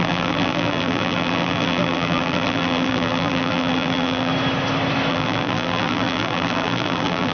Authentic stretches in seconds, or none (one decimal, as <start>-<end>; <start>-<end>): 4.3-5.1